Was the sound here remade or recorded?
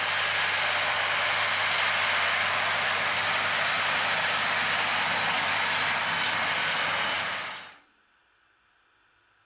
recorded